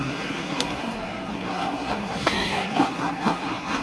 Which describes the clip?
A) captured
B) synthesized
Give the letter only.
B